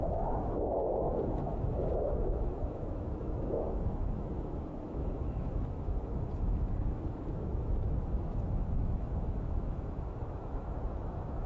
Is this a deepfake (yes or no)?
yes